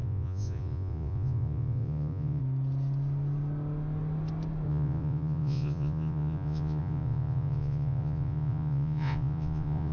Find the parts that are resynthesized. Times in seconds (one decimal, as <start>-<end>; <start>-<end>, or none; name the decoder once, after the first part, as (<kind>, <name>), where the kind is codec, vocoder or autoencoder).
0.0-2.4 (vocoder, Vocos); 4.7-9.9